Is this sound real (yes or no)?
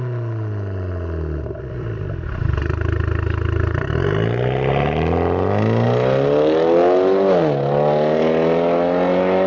yes